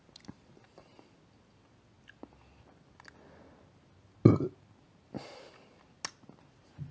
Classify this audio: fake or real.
real